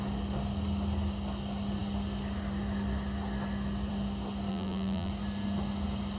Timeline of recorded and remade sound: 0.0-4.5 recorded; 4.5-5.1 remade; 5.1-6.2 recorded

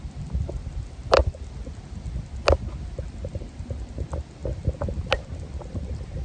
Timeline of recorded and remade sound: 0.0-6.2 recorded

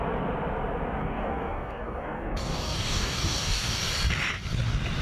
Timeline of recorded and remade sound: 0.0-1.0 recorded; 1.0-3.8 remade; 3.8-5.0 recorded

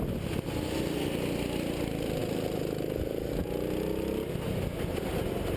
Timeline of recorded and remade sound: 0.0-5.6 recorded

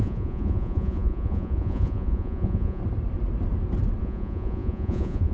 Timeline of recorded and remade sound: 0.0-2.8 remade; 2.8-4.0 recorded; 4.0-5.3 remade